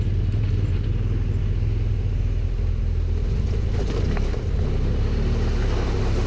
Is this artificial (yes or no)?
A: no